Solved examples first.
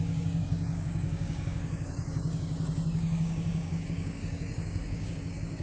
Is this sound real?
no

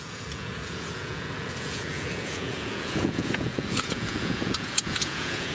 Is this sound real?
no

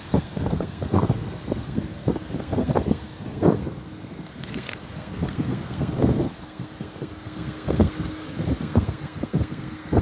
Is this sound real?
no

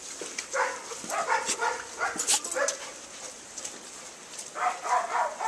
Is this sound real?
yes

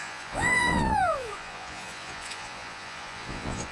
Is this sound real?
no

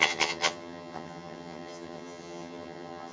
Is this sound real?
no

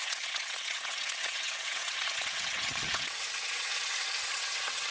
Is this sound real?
no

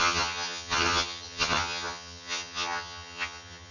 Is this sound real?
no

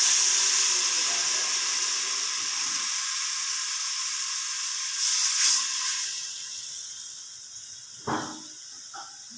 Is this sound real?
yes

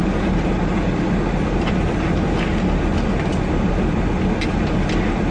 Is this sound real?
yes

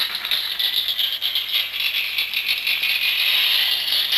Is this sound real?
yes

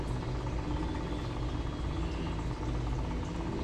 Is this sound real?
yes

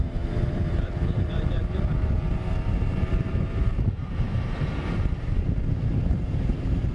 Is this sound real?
no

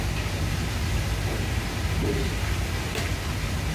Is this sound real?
yes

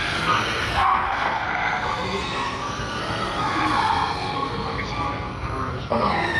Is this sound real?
no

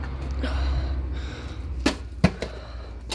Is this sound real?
yes